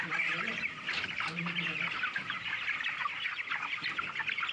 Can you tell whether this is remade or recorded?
recorded